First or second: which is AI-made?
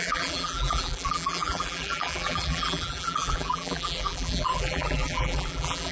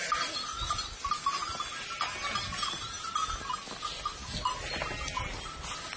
first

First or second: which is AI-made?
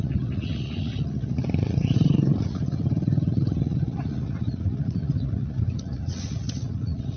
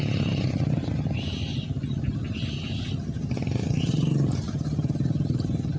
first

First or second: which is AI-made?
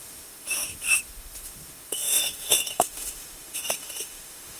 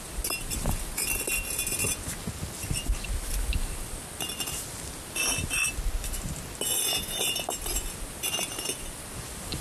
first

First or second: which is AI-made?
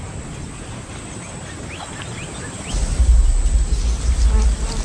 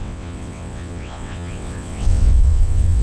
second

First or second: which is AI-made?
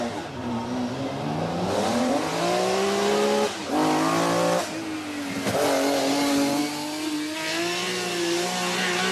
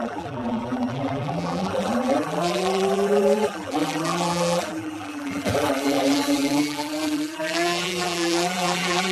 second